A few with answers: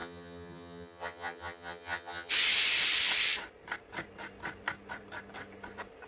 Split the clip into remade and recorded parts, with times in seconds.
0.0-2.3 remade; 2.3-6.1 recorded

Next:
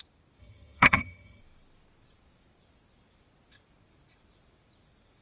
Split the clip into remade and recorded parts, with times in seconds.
0.0-0.4 recorded; 0.4-1.4 remade; 1.4-5.2 recorded